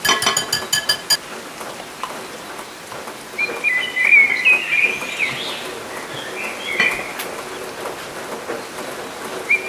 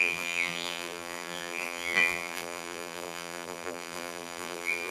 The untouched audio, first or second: first